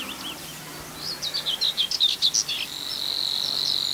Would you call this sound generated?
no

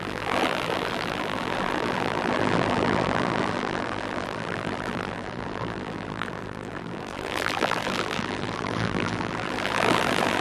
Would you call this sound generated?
yes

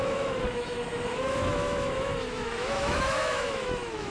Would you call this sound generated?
yes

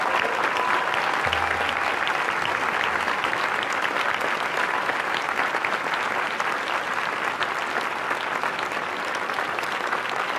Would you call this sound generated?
no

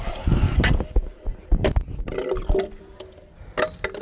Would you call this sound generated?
no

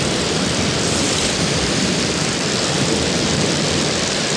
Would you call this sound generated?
yes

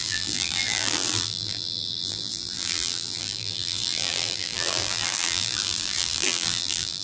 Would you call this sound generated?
yes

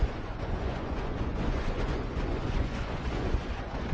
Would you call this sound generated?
yes